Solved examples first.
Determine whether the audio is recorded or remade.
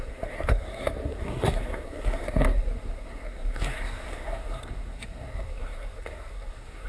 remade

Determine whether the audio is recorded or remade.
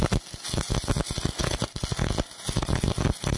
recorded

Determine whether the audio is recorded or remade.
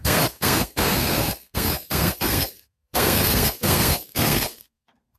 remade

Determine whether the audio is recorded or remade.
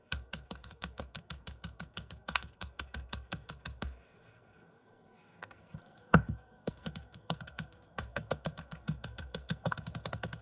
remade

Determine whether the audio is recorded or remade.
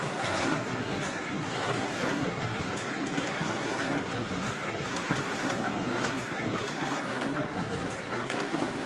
remade